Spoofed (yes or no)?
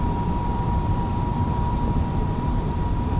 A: yes